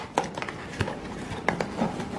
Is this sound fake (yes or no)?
no